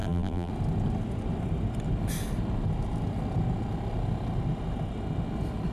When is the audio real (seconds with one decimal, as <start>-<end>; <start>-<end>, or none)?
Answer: 0.5-5.7